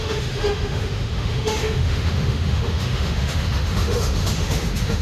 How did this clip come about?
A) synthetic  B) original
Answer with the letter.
A